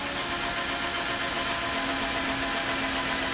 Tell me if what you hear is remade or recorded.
recorded